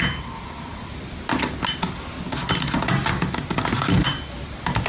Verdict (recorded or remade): recorded